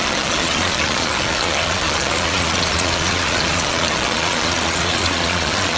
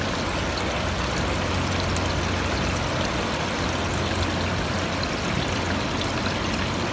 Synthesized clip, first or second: first